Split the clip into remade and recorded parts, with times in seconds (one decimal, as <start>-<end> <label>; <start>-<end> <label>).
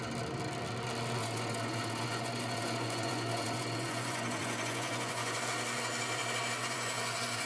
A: 0.0-1.2 recorded; 1.2-5.4 remade; 5.4-6.6 recorded; 6.6-7.5 remade